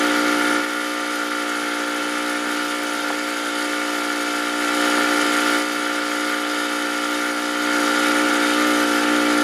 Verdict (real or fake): real